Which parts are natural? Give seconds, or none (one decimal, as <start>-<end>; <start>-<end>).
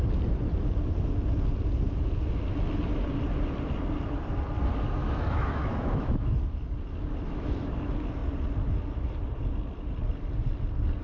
0.0-5.0; 6.4-11.0